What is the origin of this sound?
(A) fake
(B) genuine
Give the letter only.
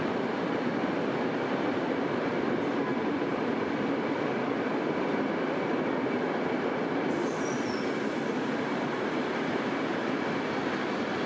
A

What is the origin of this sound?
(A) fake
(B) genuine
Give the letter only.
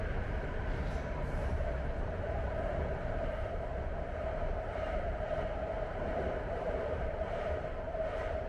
A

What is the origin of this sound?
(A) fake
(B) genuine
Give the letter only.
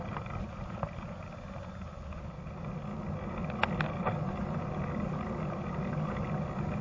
B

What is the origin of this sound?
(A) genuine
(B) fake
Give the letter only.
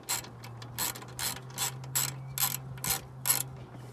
A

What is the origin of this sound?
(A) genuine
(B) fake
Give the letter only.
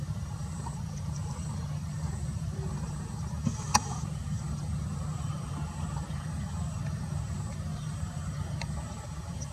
B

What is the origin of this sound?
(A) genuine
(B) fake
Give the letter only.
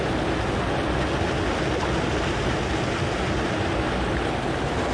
A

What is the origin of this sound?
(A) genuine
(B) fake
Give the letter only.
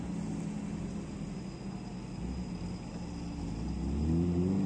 A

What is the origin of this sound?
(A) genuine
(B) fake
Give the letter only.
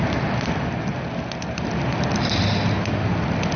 A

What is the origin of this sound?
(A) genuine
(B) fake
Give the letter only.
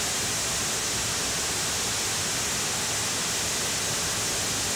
A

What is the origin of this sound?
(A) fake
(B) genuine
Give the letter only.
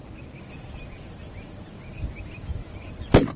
B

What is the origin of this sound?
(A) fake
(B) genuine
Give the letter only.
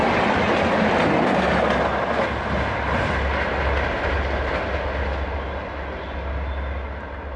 B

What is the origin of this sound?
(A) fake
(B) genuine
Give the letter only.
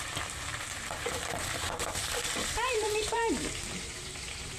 A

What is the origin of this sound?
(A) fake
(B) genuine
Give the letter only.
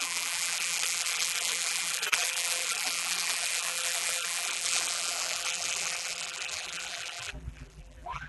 A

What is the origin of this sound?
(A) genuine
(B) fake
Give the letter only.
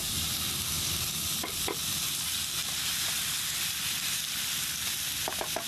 B